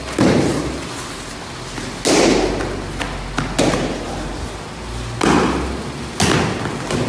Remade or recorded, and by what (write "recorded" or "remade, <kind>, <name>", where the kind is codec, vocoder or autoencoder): recorded